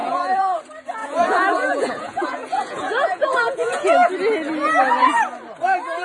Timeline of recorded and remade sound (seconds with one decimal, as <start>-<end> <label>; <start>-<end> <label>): 0.0-0.6 remade; 0.6-1.0 recorded; 1.0-4.1 remade; 4.1-6.0 recorded